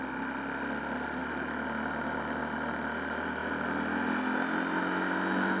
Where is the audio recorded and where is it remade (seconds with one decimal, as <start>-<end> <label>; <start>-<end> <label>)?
0.0-5.6 recorded